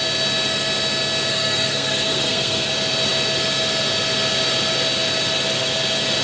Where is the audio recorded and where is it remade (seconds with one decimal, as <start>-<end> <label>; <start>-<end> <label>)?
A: 0.0-1.3 recorded; 1.3-2.7 remade; 2.7-6.2 recorded